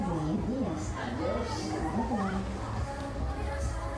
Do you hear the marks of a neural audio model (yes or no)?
no